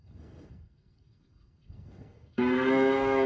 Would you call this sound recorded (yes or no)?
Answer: no